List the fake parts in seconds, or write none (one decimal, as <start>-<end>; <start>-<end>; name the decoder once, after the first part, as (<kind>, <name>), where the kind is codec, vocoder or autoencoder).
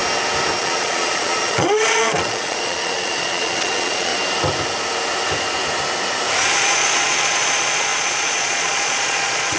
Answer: 0.6-4.1 (vocoder, Vocos); 6.6-9.6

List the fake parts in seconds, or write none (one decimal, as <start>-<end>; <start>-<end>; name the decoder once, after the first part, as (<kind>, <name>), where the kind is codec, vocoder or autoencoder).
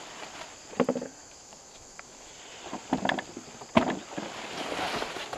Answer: 1.2-2.3 (autoencoder, DAC-VAE)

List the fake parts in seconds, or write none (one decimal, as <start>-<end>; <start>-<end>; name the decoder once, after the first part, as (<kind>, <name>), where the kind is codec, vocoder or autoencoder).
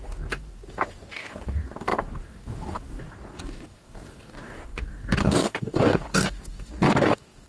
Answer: 0.0-7.5 (codec, DAC)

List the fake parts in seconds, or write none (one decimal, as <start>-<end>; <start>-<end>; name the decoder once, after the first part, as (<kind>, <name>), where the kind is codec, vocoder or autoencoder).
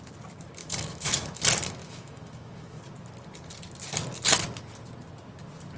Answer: 0.6-1.4 (autoencoder, DAC-VAE); 1.8-2.8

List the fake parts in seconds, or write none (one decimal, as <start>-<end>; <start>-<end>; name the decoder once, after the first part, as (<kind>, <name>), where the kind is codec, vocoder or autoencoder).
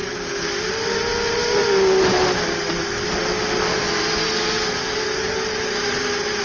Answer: none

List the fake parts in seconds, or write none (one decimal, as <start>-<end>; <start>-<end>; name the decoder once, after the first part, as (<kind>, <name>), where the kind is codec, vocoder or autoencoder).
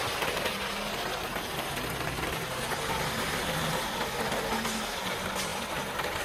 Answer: none